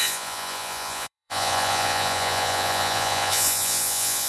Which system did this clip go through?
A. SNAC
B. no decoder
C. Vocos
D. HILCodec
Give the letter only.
C